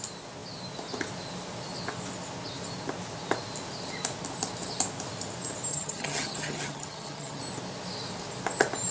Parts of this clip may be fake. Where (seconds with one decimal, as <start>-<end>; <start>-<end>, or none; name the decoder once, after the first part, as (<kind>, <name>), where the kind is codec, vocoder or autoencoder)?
5.7-7.4 (vocoder, HiFi-GAN)